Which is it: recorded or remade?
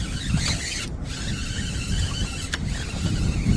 recorded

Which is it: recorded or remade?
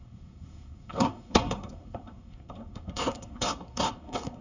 remade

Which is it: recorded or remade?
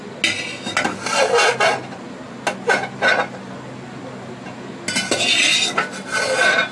recorded